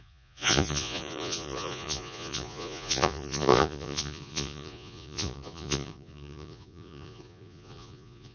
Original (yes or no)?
no